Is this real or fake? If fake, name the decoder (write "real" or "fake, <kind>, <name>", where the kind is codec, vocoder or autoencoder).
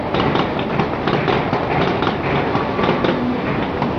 real